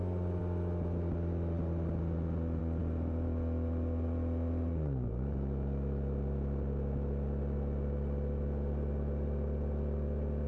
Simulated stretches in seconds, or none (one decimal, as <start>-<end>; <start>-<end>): none